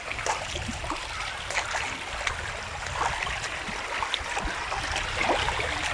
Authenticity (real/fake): real